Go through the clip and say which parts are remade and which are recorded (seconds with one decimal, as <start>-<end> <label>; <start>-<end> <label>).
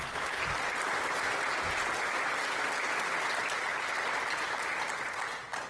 0.0-5.7 recorded